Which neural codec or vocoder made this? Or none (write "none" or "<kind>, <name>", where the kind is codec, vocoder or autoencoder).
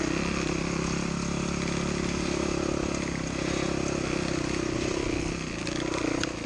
none